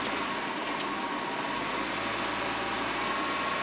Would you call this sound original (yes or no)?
yes